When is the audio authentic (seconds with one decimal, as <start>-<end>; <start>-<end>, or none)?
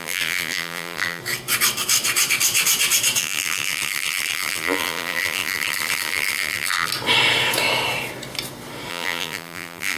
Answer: 1.2-3.2; 6.9-8.9